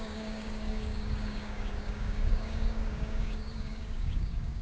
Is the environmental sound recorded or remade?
remade